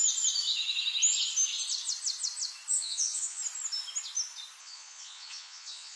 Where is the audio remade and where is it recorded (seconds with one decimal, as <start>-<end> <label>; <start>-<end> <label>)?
0.0-2.7 recorded; 2.7-3.4 remade; 3.4-4.6 recorded; 4.6-6.0 remade